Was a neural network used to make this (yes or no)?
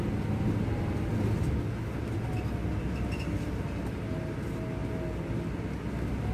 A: no